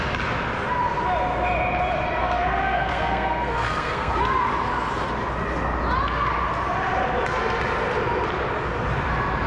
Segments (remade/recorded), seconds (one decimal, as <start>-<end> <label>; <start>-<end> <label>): 0.0-2.2 recorded; 2.2-4.1 remade; 4.1-9.5 recorded